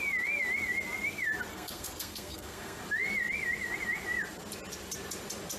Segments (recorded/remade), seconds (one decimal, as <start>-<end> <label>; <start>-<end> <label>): 0.0-1.5 recorded; 1.5-2.8 remade; 2.8-5.6 recorded